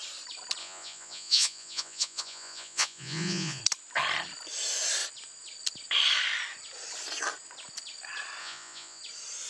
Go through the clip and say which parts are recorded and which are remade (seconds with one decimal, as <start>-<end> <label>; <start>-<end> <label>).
0.0-0.6 recorded; 0.6-3.6 remade; 3.6-8.4 recorded; 8.4-9.0 remade; 9.0-9.5 recorded